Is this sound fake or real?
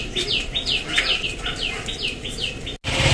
real